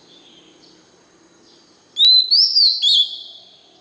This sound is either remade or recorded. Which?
recorded